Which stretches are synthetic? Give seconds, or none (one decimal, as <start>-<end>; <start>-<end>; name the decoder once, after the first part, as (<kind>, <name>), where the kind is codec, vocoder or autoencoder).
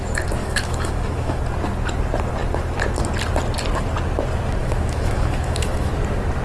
0.4-1.4 (autoencoder, DAC-VAE); 4.6-5.9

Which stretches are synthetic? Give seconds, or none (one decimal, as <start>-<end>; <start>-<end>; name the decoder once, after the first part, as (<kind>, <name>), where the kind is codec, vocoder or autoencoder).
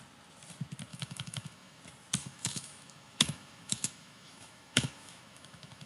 0.9-1.8 (autoencoder, DAC-VAE); 2.2-5.9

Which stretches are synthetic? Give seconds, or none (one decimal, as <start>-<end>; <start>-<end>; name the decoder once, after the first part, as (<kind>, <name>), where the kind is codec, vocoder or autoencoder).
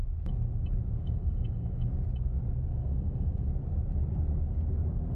1.0-1.9 (codec, SNAC); 2.7-3.5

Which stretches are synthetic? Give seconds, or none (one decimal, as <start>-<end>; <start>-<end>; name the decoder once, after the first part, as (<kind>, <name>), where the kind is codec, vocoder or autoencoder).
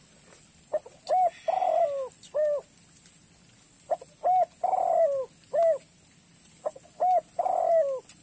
none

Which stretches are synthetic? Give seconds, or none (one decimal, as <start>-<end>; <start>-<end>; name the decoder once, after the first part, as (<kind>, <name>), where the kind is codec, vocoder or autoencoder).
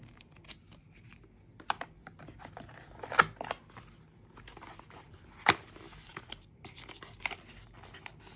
none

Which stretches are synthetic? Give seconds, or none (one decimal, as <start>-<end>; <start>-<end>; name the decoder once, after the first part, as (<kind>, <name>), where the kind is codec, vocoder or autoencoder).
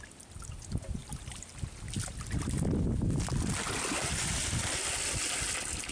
none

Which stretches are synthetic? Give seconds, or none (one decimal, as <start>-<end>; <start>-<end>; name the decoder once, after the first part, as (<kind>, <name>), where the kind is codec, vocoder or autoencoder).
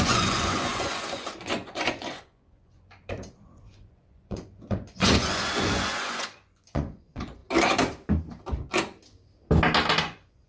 0.0-7.4 (vocoder, Vocos); 10.0-10.5